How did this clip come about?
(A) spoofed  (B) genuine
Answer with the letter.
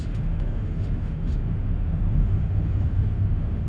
A